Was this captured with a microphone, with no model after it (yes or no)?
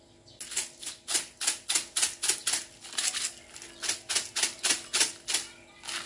yes